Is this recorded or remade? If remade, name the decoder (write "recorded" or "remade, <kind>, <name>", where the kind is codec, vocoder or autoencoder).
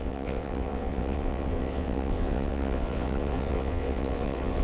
remade, vocoder, WaveNeXt